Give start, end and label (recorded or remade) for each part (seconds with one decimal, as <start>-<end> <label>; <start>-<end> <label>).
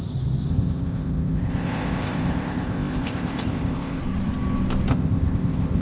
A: 0.0-0.5 recorded; 0.5-4.0 remade; 4.0-4.9 recorded; 4.9-5.8 remade